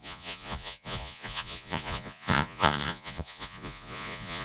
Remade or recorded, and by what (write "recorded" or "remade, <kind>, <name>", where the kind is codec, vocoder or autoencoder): remade, vocoder, Vocos